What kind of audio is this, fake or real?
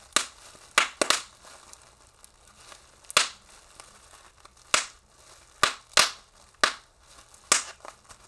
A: real